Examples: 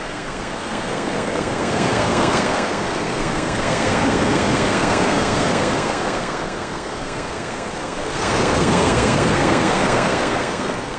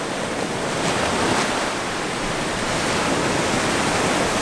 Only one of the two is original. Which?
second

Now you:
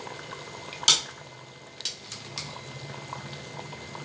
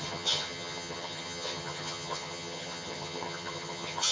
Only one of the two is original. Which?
first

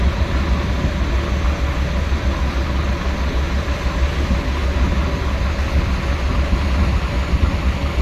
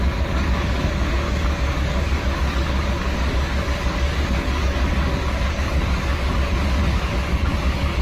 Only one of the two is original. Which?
first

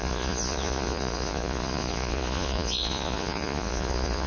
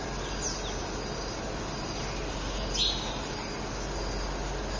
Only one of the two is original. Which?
second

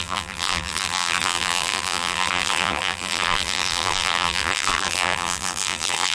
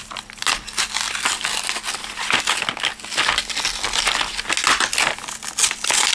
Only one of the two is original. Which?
second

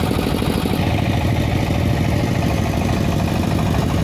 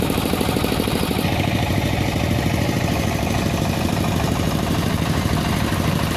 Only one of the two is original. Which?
first